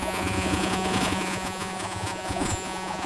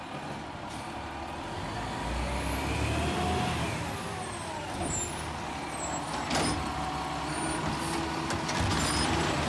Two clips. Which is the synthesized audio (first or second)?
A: first